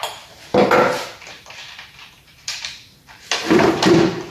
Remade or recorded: remade